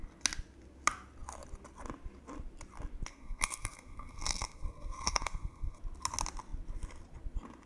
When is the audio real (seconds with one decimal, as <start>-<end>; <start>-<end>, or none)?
0.0-3.1; 5.8-7.7